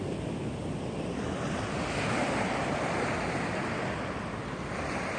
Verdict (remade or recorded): recorded